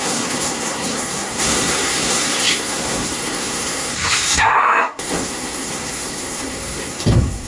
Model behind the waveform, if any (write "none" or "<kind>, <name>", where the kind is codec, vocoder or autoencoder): codec, SNAC